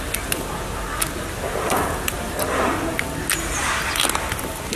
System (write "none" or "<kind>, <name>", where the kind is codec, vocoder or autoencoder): none